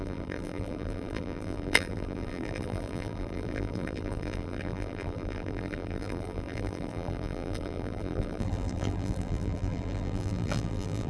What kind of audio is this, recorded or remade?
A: remade